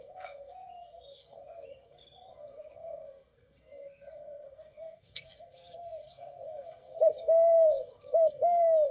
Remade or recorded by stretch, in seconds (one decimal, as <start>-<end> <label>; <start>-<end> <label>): 0.0-8.9 remade